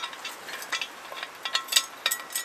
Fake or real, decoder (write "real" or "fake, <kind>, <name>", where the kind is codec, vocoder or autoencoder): real